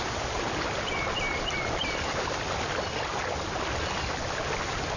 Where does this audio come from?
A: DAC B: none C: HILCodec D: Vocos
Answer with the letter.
B